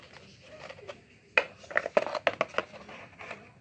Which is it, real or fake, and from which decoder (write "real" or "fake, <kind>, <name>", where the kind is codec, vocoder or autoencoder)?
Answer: real